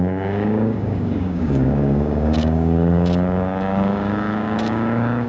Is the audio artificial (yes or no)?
yes